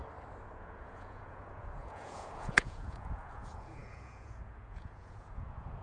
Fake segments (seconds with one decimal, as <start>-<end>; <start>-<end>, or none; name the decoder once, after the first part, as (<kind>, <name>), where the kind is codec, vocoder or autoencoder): 0.6-5.8 (vocoder, Vocos)